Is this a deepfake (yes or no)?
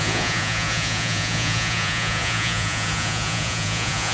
yes